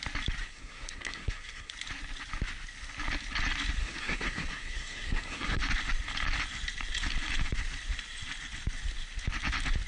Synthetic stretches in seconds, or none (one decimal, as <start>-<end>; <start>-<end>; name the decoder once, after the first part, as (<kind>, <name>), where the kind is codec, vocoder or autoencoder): 0.4-1.7 (codec, SNAC); 3.8-5.6